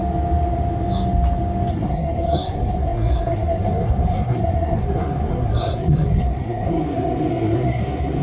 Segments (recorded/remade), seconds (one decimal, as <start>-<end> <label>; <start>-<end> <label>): 0.0-1.7 recorded; 1.7-8.2 remade